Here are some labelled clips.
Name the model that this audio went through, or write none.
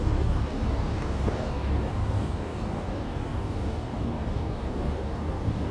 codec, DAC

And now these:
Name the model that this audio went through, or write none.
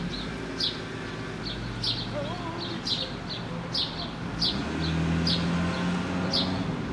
none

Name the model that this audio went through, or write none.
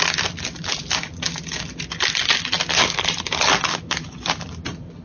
none